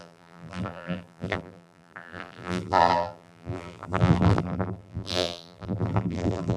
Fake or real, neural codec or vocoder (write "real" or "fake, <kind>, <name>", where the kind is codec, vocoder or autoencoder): fake, vocoder, BigVGAN v2